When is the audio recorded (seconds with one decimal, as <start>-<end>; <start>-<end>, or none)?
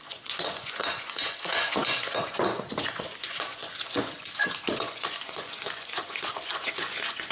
none